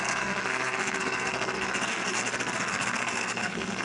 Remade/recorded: remade